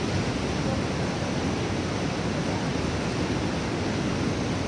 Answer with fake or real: real